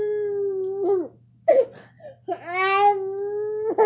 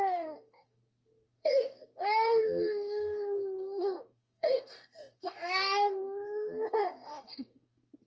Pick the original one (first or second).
first